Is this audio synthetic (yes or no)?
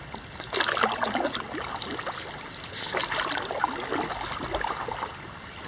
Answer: no